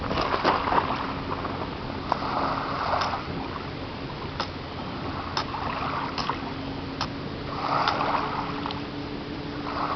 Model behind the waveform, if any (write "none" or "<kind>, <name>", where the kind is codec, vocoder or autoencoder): none